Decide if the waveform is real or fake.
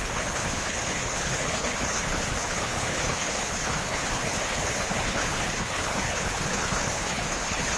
fake